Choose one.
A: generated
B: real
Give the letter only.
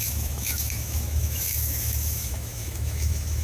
A